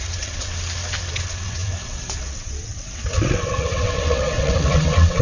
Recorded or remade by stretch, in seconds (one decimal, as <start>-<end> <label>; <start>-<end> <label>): 0.0-0.5 remade; 0.5-1.1 recorded; 1.1-5.2 remade